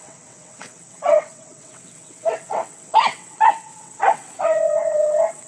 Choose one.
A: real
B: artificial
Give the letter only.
B